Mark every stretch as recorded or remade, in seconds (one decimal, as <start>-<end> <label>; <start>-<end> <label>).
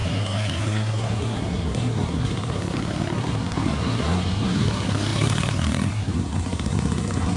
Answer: 0.0-7.4 remade